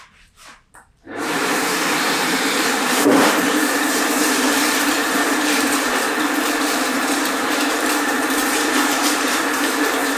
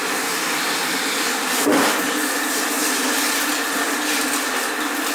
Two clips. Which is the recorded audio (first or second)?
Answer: second